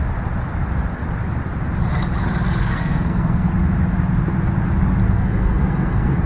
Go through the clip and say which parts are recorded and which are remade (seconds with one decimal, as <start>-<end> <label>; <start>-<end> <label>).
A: 0.0-2.6 recorded; 2.6-3.5 remade; 3.5-5.0 recorded; 5.0-6.3 remade